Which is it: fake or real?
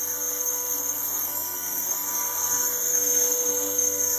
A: fake